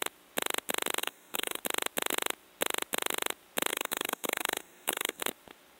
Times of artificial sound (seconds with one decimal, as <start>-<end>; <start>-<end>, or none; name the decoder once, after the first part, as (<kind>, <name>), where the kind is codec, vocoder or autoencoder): 1.0-1.6 (codec, DAC); 3.7-5.2